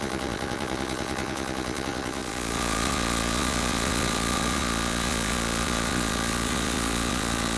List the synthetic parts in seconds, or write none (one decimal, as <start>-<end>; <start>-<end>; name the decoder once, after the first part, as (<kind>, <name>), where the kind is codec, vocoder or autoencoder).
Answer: 0.0-7.6 (vocoder, Vocos)